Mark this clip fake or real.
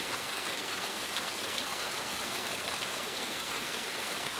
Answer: fake